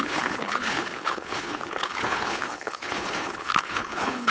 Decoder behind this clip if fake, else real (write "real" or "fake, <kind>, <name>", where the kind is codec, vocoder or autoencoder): fake, codec, HILCodec